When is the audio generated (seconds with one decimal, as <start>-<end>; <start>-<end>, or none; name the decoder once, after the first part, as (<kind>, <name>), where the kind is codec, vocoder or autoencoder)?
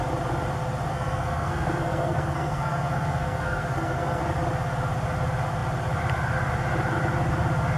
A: 0.9-4.2 (codec, SNAC)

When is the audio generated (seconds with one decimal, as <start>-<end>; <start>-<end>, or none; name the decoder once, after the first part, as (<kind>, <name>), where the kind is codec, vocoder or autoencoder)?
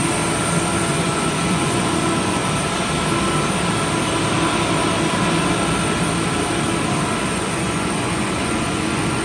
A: 0.9-2.4 (vocoder, Vocos); 7.2-9.2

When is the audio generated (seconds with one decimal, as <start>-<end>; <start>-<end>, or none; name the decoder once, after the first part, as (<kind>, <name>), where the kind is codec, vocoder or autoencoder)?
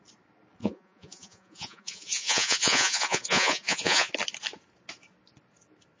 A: 0.6-4.1 (vocoder, Vocos)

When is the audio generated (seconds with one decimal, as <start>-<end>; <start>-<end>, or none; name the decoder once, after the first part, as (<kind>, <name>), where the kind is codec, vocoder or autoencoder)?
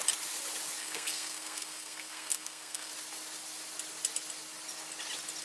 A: 0.8-2.9 (codec, SNAC)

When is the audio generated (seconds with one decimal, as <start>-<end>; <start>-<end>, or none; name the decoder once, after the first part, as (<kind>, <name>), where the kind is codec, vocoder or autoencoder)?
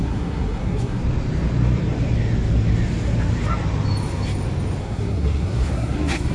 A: 0.0-1.0 (codec, SNAC); 4.8-6.3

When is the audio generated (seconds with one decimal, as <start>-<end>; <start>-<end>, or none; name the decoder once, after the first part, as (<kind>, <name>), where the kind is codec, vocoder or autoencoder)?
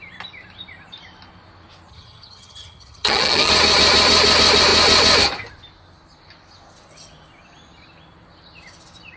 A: 1.9-3.5 (vocoder, HiFi-GAN)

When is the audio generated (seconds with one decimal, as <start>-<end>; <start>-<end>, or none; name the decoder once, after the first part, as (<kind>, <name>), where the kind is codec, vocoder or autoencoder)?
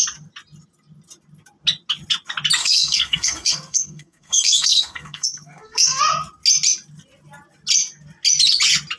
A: 2.6-6.0 (codec, SNAC)